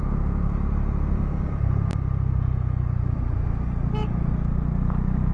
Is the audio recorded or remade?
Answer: recorded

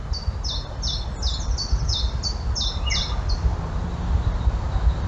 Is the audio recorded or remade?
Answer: recorded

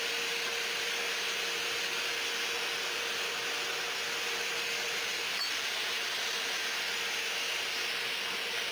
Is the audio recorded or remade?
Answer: recorded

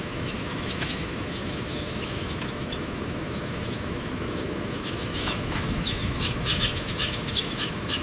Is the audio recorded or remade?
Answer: remade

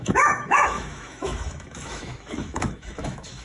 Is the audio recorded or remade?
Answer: remade